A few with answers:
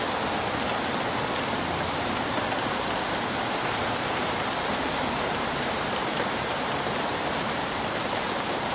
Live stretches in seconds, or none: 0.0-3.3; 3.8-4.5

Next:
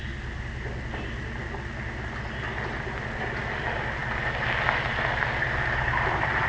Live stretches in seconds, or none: 0.0-6.5

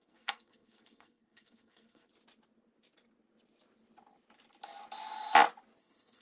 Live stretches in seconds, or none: 2.1-5.8

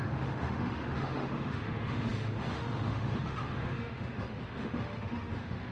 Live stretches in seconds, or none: none